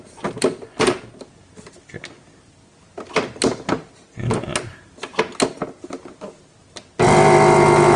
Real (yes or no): yes